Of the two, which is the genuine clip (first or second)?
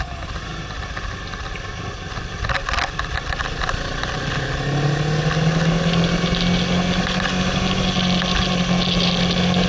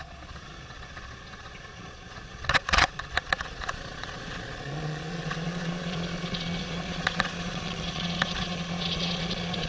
first